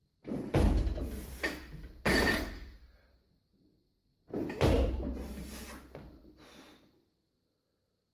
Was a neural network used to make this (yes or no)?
no